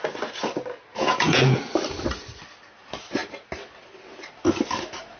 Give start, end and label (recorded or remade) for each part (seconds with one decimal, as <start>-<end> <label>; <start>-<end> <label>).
0.0-0.9 recorded; 0.9-1.6 remade; 1.6-5.2 recorded

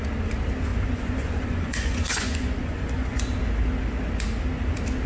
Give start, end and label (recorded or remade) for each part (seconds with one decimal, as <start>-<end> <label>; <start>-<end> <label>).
0.0-0.7 recorded; 0.7-3.2 remade; 3.2-5.1 recorded

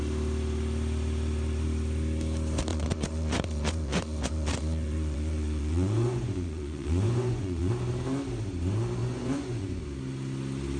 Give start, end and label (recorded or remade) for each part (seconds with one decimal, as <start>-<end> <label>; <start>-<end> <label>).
0.0-2.7 recorded; 2.7-7.7 remade; 7.7-9.0 recorded; 9.0-9.8 remade; 9.8-10.8 recorded

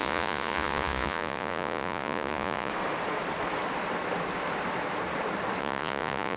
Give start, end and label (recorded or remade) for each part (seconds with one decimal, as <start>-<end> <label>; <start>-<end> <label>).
0.0-2.7 remade; 2.7-5.6 recorded; 5.6-6.4 remade

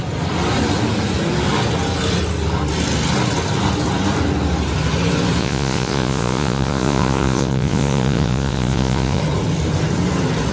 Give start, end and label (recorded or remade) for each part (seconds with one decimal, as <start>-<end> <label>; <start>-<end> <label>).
0.0-5.4 recorded; 5.4-9.2 remade; 9.2-10.5 recorded

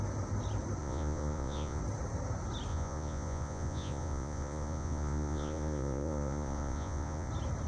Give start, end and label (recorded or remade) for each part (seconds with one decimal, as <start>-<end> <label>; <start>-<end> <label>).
0.0-0.8 recorded; 0.8-1.8 remade; 1.8-2.7 recorded; 2.7-7.3 remade; 7.3-7.7 recorded